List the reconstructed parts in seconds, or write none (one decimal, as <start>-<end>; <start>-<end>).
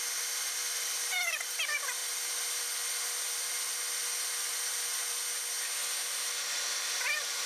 none